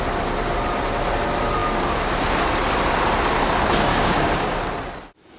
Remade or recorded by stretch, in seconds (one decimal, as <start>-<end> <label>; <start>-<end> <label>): 0.0-3.9 recorded; 3.9-4.6 remade; 4.6-5.4 recorded